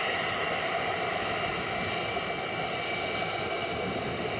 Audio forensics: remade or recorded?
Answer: recorded